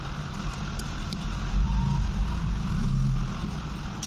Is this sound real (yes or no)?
yes